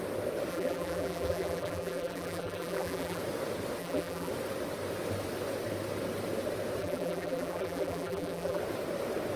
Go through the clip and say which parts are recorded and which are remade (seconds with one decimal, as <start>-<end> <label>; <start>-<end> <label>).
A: 0.0-0.5 recorded; 0.5-3.2 remade; 3.2-3.8 recorded; 3.8-4.3 remade; 4.3-6.8 recorded; 6.8-8.6 remade; 8.6-9.4 recorded